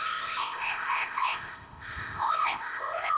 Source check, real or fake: fake